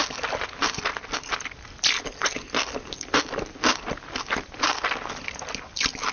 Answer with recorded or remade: recorded